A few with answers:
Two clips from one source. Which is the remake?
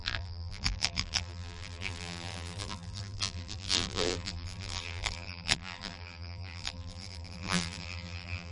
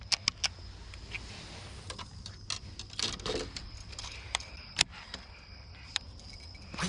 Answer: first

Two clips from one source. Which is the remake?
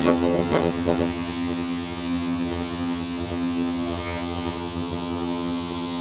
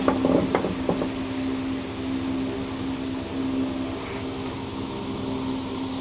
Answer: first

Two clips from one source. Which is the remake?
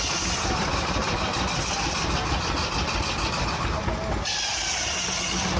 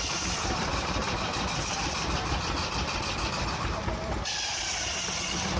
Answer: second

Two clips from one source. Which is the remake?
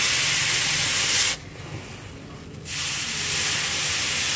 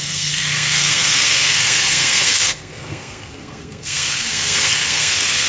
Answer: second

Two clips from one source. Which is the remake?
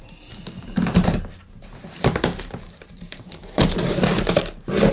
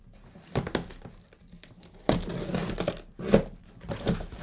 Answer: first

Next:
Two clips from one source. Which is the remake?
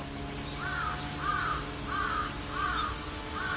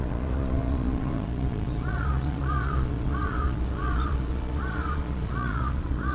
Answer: second